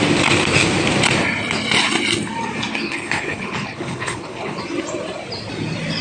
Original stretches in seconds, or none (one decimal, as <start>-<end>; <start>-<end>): 0.0-2.7; 4.6-6.0